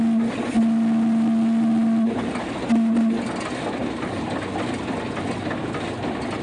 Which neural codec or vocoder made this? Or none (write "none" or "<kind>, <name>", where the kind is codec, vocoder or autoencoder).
none